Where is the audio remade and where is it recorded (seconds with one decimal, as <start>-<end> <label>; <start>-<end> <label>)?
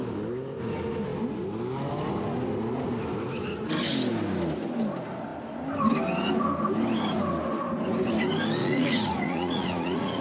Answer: 0.0-8.6 recorded; 8.6-10.2 remade